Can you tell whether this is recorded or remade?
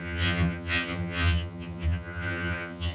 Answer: remade